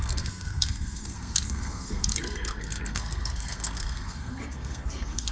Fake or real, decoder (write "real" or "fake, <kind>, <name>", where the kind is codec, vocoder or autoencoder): fake, codec, SNAC